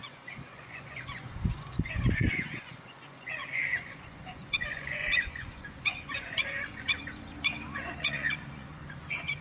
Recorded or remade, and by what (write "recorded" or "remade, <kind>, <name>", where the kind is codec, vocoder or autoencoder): remade, vocoder, Vocos